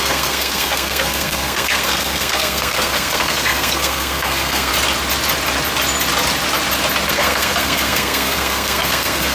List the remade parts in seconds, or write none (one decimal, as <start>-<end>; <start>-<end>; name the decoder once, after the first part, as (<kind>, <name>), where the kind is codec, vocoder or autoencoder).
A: 0.0-4.7 (codec, SNAC); 7.1-9.3